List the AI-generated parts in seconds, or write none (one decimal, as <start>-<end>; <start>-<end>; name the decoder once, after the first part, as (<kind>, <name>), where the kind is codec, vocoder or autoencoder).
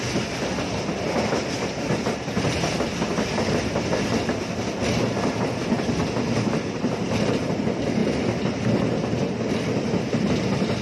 none